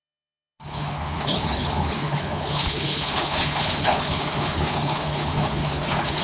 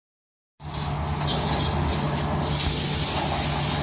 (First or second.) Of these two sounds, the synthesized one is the first